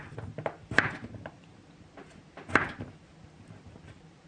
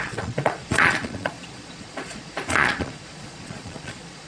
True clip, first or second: first